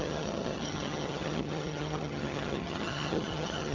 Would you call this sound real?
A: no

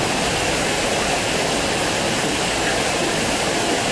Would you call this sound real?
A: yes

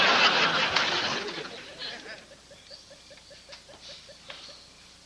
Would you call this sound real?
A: yes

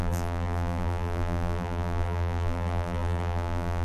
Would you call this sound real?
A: no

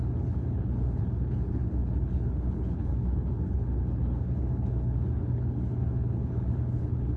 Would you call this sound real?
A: no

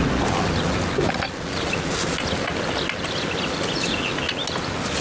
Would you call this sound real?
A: yes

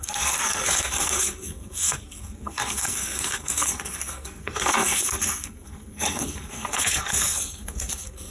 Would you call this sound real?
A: no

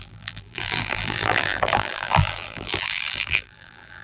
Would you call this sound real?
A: no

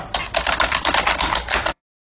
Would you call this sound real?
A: yes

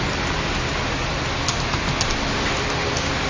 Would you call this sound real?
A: yes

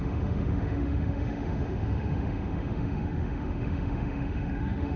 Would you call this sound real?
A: no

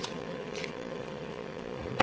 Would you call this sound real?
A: no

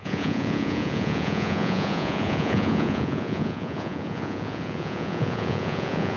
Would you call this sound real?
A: no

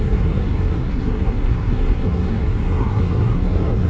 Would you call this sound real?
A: no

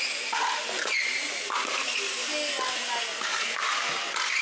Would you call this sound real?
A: yes